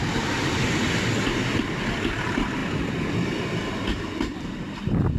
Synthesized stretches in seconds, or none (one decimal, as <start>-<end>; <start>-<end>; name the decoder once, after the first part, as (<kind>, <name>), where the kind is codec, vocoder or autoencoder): none